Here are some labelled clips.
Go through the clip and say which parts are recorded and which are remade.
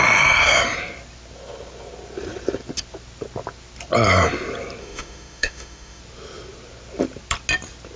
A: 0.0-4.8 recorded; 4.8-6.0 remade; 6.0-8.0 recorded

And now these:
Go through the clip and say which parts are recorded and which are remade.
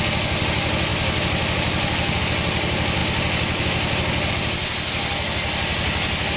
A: 0.0-6.4 recorded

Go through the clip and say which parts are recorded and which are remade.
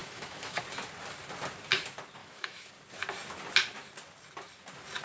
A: 0.0-0.6 remade; 0.6-2.2 recorded; 2.2-2.7 remade; 2.7-5.0 recorded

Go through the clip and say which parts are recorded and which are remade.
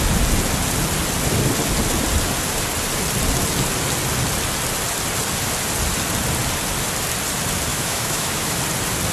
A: 0.0-7.7 recorded; 7.7-8.6 remade; 8.6-9.1 recorded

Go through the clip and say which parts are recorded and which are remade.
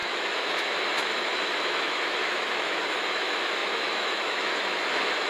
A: 0.0-5.3 remade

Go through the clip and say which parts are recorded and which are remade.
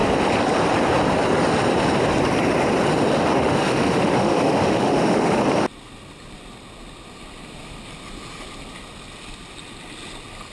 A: 0.0-3.1 recorded; 3.1-5.4 remade; 5.4-10.5 recorded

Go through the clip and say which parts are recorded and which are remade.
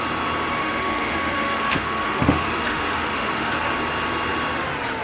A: 0.0-0.6 recorded; 0.6-3.5 remade; 3.5-5.0 recorded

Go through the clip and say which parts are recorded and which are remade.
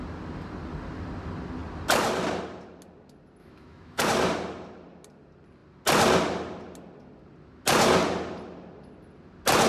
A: 0.0-3.4 recorded; 3.4-4.0 remade; 4.0-9.7 recorded